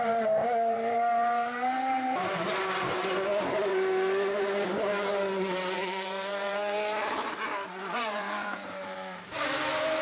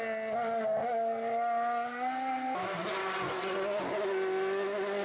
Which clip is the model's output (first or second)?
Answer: first